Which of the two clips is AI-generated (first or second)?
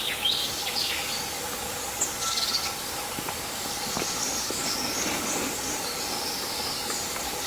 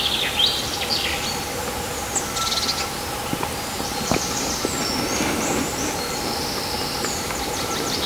first